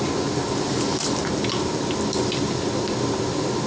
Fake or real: real